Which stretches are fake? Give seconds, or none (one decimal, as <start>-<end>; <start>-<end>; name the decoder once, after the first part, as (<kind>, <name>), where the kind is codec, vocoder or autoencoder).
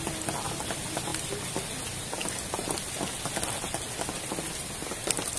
none